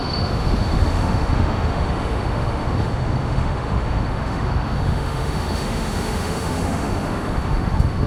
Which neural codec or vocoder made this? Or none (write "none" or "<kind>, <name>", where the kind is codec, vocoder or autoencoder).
autoencoder, DAC-VAE